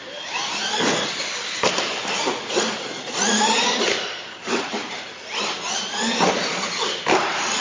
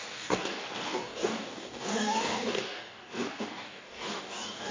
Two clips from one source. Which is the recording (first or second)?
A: first